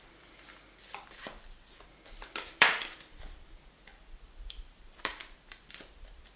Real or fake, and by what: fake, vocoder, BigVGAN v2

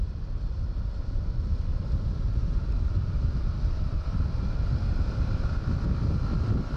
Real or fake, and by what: fake, vocoder, BigVGAN v2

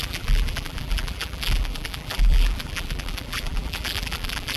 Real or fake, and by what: fake, vocoder, BigVGAN v2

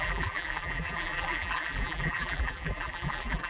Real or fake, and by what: fake, vocoder, BigVGAN v2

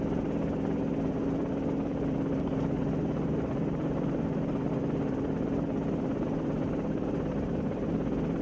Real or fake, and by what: fake, vocoder, BigVGAN v2